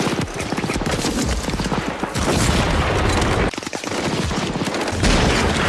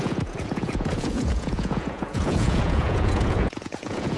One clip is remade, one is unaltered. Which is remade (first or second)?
second